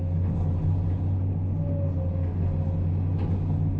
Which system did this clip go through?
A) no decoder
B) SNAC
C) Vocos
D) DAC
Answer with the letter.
A